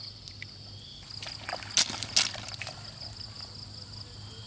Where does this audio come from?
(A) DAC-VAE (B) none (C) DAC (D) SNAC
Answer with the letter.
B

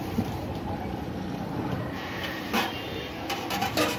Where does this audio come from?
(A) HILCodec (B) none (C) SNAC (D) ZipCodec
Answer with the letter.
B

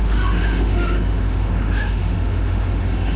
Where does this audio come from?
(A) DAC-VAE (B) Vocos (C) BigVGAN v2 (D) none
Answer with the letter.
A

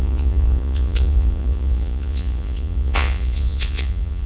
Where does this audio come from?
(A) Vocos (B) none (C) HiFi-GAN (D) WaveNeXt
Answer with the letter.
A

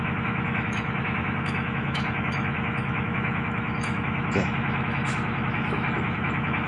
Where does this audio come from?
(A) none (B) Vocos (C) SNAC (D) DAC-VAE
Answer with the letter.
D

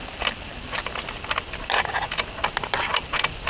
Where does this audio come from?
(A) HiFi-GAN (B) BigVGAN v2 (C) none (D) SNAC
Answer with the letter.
C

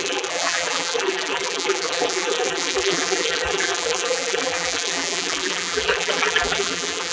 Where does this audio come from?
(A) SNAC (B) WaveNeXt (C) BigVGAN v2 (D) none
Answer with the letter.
C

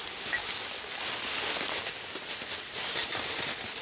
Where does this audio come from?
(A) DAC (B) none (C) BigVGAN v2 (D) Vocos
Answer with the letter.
B